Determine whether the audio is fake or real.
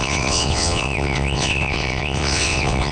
fake